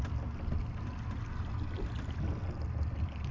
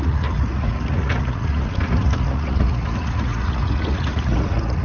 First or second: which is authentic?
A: first